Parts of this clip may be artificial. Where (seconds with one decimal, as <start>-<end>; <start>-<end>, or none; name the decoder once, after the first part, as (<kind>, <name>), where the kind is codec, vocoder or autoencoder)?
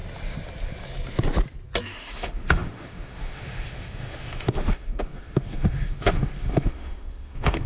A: 1.8-7.7 (autoencoder, DAC-VAE)